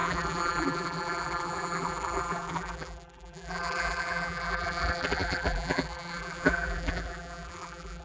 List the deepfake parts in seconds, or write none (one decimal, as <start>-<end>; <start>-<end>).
0.0-8.0